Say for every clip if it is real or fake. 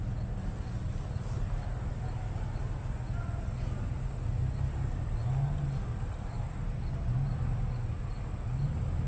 real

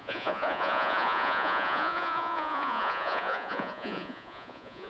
fake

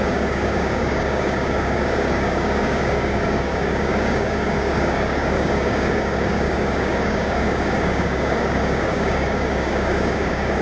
fake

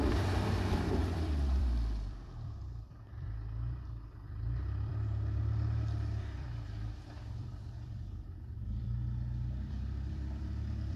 fake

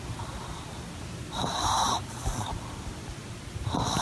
fake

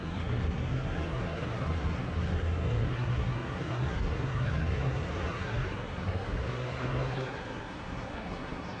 fake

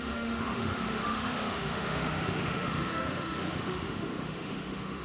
fake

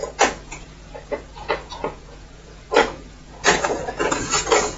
fake